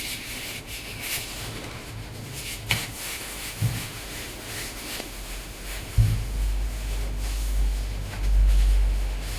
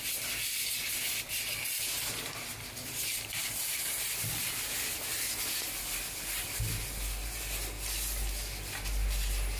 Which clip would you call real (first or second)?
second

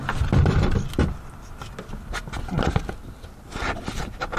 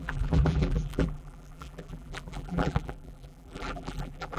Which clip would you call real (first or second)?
first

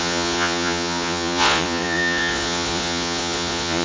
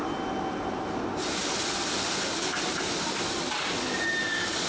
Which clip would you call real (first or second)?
second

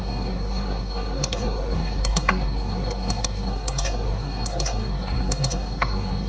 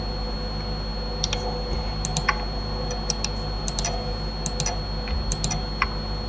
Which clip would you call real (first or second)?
second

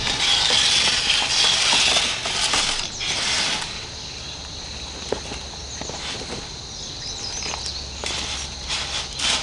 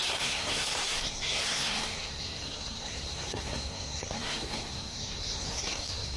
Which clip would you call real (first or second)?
first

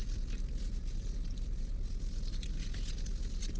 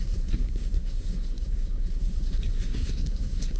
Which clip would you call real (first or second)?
first